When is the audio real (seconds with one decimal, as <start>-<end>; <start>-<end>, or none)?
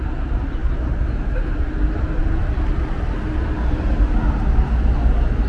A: 0.0-5.5